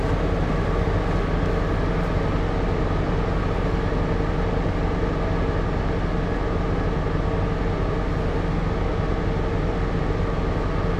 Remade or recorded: recorded